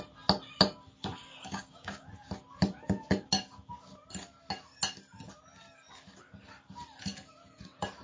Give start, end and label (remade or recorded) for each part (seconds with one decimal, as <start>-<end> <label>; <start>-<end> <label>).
0.0-1.2 recorded; 1.2-2.1 remade; 2.1-8.0 recorded